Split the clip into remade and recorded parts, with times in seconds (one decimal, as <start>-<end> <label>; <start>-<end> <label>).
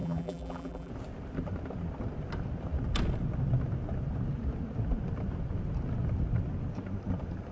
0.0-0.9 remade; 0.9-7.5 recorded